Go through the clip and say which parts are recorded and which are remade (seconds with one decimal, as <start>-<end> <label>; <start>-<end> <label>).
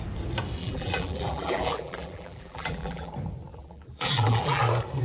0.0-0.6 recorded; 0.6-3.1 remade; 3.1-3.5 recorded; 3.5-4.6 remade; 4.6-5.0 recorded